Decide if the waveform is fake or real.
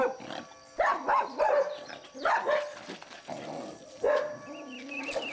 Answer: real